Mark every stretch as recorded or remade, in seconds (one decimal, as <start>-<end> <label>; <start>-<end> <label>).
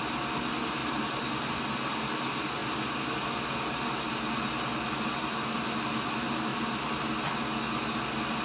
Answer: 0.0-0.8 recorded; 0.8-1.6 remade; 1.6-6.5 recorded; 6.5-7.0 remade; 7.0-8.4 recorded